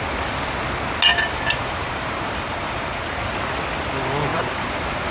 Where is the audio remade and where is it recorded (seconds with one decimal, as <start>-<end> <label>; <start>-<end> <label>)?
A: 0.0-1.1 recorded; 1.1-3.2 remade; 3.2-4.3 recorded; 4.3-5.1 remade